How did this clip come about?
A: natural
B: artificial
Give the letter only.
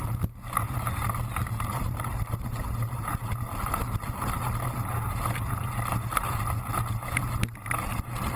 A